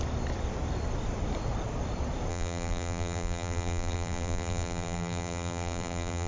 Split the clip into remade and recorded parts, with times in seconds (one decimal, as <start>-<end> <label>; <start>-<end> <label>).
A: 0.0-2.3 recorded; 2.3-6.3 remade